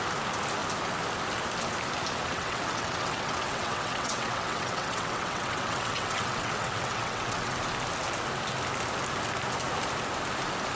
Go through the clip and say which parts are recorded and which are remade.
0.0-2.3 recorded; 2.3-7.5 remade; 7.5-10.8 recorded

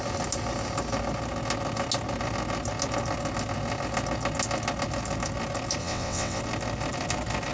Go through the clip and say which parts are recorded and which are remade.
0.0-5.8 recorded; 5.8-6.4 remade; 6.4-7.5 recorded

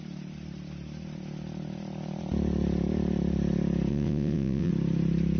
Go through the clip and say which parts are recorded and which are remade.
0.0-3.9 recorded; 3.9-4.7 remade; 4.7-5.4 recorded

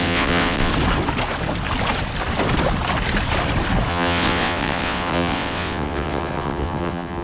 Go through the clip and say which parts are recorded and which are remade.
0.0-0.7 remade; 0.7-3.9 recorded; 3.9-7.2 remade